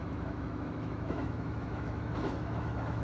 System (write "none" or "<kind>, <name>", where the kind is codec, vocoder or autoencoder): autoencoder, DAC-VAE